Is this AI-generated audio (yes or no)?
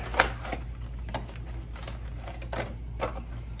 no